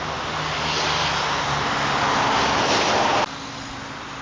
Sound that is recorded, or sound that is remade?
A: recorded